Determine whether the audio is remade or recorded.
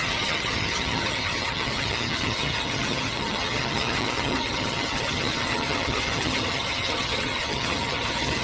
remade